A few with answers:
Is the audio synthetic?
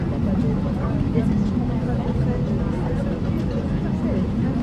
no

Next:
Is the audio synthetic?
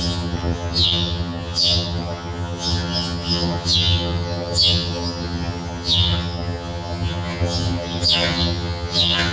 yes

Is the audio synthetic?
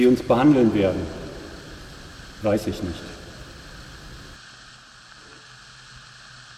no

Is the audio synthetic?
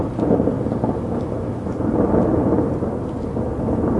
no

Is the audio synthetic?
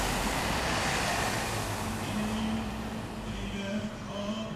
no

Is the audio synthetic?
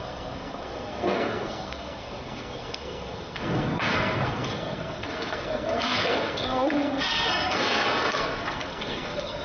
yes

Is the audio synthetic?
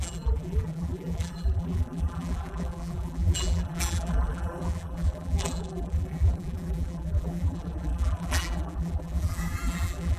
yes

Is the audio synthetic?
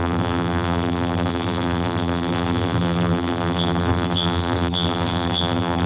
yes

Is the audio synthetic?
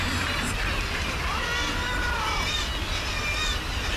no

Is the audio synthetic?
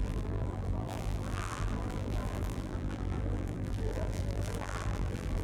yes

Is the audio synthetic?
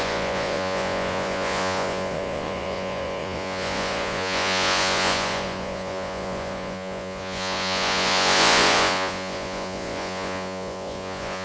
yes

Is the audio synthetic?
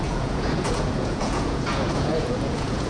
yes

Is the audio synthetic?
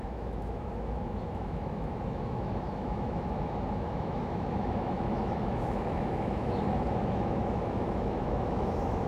yes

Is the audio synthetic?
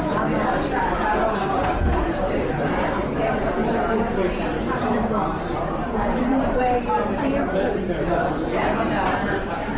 yes